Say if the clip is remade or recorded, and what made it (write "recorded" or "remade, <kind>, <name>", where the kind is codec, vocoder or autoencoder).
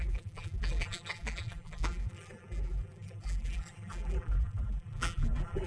remade, vocoder, BigVGAN v2